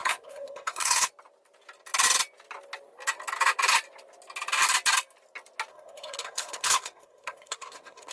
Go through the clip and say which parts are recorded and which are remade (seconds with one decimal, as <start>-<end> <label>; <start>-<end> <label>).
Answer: 0.0-1.1 remade; 1.1-5.7 recorded; 5.7-8.1 remade